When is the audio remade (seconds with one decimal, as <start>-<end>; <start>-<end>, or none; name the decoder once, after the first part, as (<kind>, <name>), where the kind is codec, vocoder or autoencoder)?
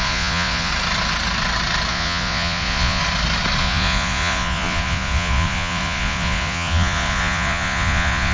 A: 0.0-0.7 (vocoder, Vocos); 1.9-3.0; 3.6-8.3